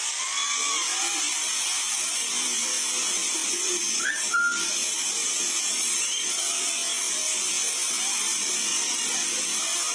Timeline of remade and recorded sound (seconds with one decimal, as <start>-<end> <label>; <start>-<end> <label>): 0.0-5.7 recorded; 5.7-6.4 remade; 6.4-8.7 recorded; 8.7-9.4 remade; 9.4-9.9 recorded